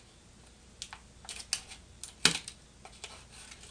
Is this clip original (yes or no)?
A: yes